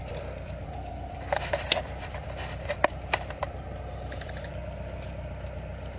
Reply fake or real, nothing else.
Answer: fake